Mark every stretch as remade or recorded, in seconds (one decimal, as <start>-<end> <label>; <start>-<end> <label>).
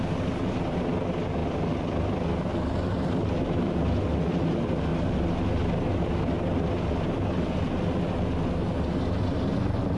0.0-10.0 recorded